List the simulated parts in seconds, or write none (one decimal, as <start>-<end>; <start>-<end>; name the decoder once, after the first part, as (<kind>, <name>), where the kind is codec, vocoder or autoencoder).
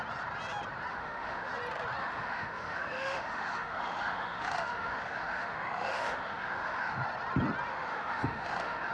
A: 0.9-1.5 (autoencoder, DAC-VAE); 2.0-7.0; 7.7-8.9